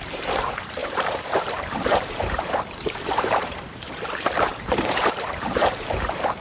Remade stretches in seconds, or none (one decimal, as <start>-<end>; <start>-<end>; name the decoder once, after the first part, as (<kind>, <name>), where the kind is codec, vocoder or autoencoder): 0.0-6.4 (vocoder, BigVGAN v2)